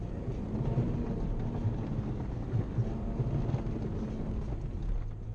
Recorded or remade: recorded